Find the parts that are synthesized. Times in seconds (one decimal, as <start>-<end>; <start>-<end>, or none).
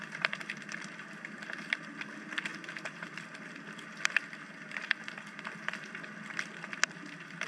none